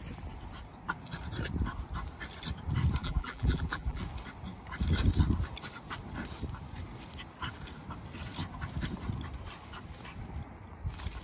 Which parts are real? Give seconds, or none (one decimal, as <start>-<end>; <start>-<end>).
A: 0.0-3.0; 4.0-11.2